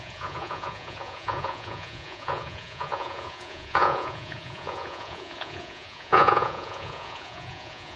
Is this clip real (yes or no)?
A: no